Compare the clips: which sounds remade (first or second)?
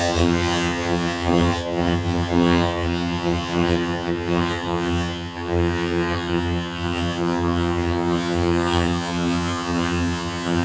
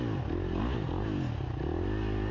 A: first